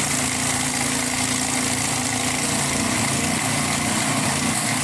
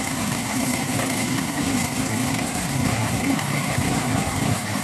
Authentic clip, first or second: first